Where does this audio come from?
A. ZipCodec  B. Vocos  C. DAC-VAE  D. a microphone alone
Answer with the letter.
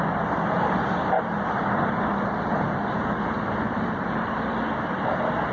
D